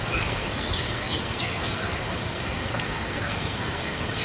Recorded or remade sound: remade